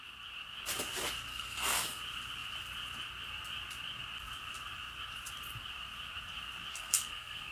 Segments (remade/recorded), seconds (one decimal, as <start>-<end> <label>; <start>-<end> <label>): 0.0-1.3 recorded; 1.3-2.0 remade; 2.0-6.7 recorded; 6.7-7.5 remade

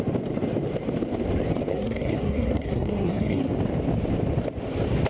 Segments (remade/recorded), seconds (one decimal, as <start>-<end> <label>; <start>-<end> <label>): 0.0-1.7 recorded; 1.7-3.5 remade; 3.5-5.1 recorded